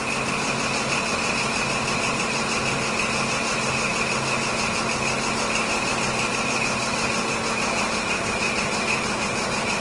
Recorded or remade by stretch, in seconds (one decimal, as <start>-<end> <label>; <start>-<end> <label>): 0.0-9.8 recorded